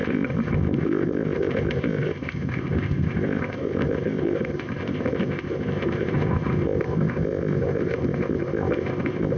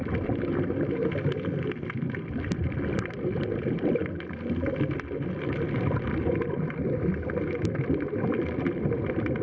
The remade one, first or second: first